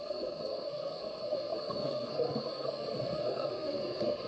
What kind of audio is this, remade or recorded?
remade